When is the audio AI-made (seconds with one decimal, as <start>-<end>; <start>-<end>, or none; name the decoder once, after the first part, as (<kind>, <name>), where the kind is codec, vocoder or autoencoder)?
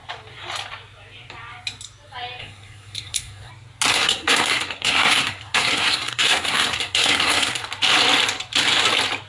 2.4-3.5 (codec, SNAC); 3.9-7.6